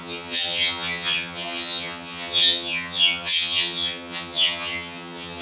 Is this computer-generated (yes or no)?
yes